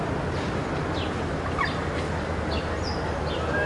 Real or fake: real